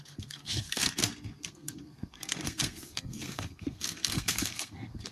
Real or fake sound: fake